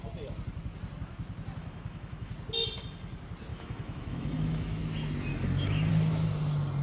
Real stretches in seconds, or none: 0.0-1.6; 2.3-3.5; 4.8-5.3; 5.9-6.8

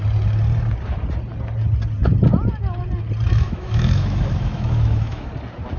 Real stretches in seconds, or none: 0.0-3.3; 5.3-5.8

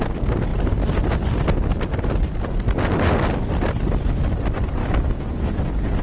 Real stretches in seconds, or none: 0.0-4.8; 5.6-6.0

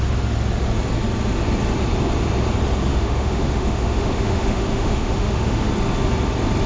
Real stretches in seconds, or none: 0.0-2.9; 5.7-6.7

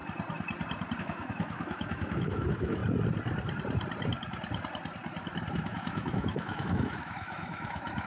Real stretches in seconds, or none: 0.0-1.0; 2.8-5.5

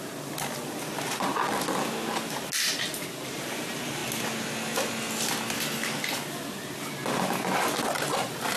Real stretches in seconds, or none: 0.0-8.6

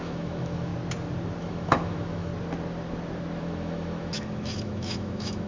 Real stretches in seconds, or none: 0.7-1.4; 2.3-3.4